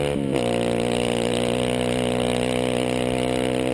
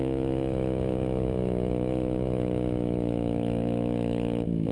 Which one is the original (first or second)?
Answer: first